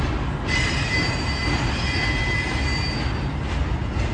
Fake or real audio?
real